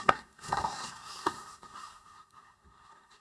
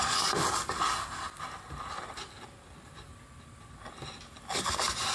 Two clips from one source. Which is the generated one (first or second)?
first